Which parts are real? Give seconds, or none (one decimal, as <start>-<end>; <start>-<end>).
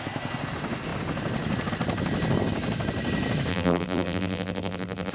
0.0-3.5